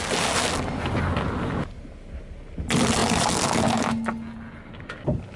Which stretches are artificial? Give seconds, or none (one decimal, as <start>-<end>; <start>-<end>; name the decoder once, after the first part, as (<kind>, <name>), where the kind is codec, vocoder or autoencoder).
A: none